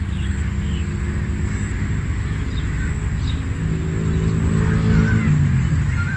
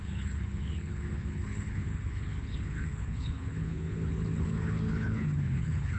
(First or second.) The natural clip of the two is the first